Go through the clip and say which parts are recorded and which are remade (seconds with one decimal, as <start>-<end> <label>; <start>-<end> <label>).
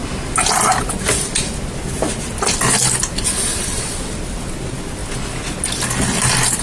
0.0-6.6 recorded